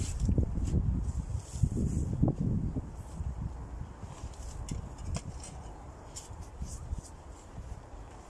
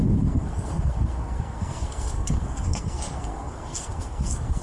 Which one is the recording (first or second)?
first